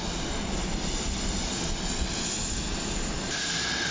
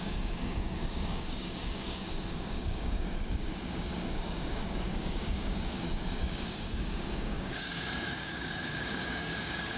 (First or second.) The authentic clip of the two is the first